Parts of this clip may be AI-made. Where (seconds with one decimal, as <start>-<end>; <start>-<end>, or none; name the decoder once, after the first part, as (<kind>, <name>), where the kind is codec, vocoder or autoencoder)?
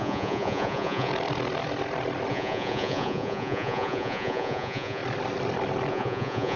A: 0.0-1.1 (vocoder, Vocos); 2.3-5.0; 5.9-6.6